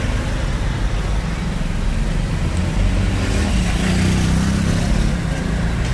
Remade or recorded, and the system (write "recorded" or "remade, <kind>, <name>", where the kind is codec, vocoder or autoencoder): recorded